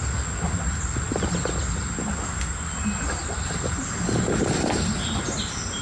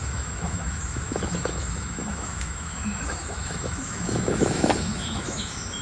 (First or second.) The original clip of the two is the first